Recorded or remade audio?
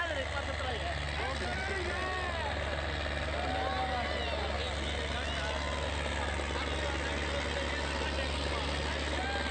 recorded